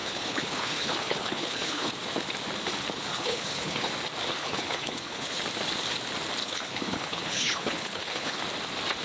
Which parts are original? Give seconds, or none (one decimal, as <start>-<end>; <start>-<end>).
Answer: 1.9-3.1; 3.9-4.4; 5.4-6.4; 8.4-9.0